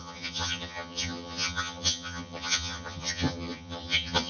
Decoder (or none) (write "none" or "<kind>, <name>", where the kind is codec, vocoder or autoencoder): vocoder, HiFi-GAN